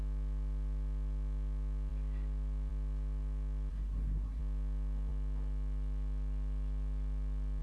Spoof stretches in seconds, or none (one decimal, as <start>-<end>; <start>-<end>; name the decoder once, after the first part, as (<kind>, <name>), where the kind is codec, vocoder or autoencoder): 3.7-4.4 (codec, SNAC)